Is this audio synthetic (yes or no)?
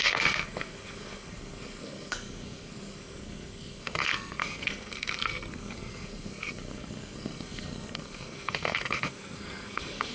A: yes